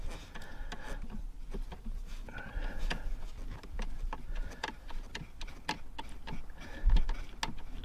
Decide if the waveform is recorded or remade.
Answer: recorded